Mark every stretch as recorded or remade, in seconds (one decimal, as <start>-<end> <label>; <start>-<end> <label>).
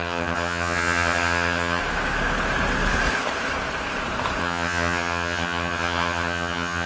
0.0-1.8 remade; 1.8-4.4 recorded; 4.4-6.9 remade